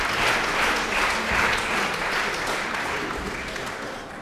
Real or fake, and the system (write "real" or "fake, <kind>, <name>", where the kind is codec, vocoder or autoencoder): real